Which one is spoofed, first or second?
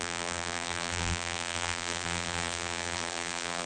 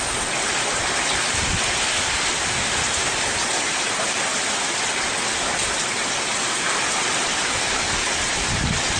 first